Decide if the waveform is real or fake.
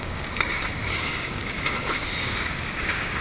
fake